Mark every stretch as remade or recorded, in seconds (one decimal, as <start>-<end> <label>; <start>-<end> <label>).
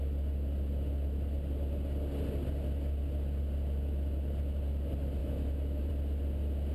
0.0-5.2 recorded; 5.2-5.9 remade; 5.9-6.7 recorded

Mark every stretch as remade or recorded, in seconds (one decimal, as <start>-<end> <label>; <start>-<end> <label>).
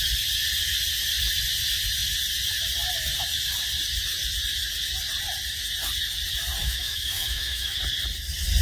0.0-6.6 recorded; 6.6-7.8 remade; 7.8-8.6 recorded